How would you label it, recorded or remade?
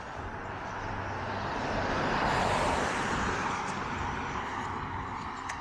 recorded